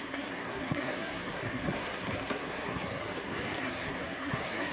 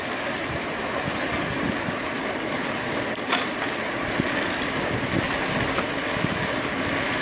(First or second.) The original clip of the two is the second